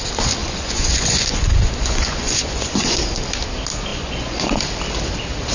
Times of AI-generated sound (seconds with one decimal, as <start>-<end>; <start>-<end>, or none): 0.4-3.0; 3.9-4.6